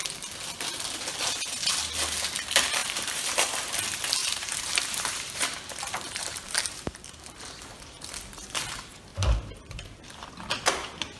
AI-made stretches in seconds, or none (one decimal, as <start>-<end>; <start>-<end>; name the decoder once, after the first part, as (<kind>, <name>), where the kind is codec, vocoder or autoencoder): 2.8-3.8 (vocoder, BigVGAN v2); 4.2-7.4; 9.1-10.0

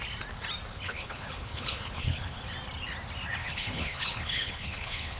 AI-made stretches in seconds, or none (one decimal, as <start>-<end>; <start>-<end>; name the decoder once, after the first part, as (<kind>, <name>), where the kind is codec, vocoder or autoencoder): 0.7-2.4 (codec, HILCodec); 3.4-5.2

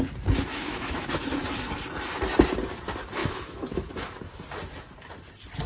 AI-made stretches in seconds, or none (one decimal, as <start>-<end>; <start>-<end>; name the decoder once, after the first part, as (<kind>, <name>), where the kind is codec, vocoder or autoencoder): 0.5-1.4 (autoencoder, DAC-VAE); 3.2-4.2

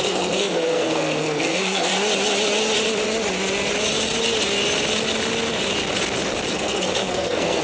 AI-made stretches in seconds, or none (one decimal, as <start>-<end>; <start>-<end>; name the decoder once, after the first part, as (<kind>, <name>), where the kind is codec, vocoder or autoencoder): 0.0-1.9 (codec, SNAC); 6.5-7.6